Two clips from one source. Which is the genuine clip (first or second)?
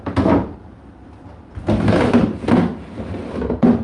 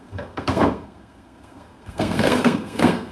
first